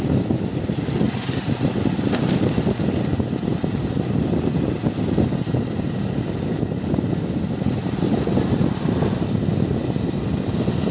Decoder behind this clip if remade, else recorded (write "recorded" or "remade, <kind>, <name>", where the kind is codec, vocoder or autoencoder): recorded